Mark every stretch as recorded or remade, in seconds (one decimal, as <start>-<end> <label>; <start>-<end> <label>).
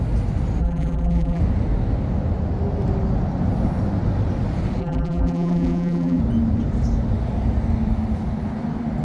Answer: 0.0-0.6 recorded; 0.6-1.4 remade; 1.4-4.8 recorded; 4.8-6.2 remade; 6.2-9.0 recorded